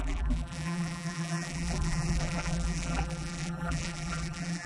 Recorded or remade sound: remade